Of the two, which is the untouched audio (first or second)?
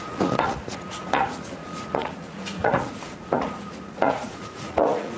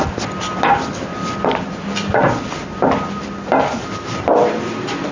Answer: second